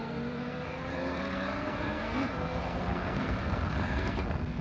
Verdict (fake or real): fake